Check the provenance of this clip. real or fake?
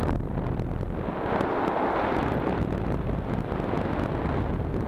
real